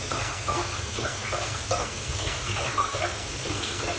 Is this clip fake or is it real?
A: fake